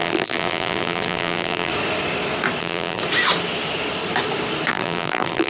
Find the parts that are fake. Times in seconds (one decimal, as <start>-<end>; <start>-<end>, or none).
0.0-1.7; 2.6-3.0; 4.7-5.5